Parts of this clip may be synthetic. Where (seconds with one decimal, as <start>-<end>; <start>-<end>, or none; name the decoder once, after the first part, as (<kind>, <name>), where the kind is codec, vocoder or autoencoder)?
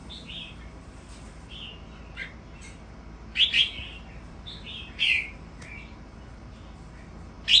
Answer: 0.0-1.3 (vocoder, BigVGAN v2); 3.6-5.7